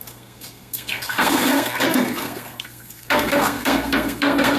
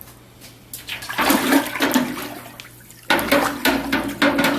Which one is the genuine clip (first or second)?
second